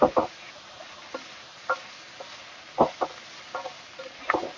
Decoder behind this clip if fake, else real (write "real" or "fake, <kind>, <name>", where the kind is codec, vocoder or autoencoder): real